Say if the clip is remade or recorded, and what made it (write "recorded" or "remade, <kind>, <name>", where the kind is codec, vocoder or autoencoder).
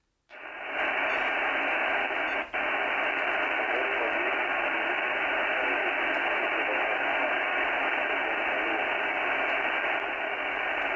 recorded